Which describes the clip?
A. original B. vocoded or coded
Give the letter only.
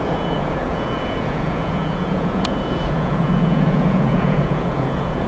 B